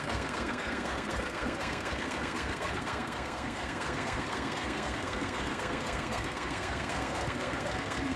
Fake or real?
fake